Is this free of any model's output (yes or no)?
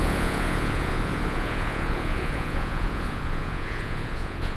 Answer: no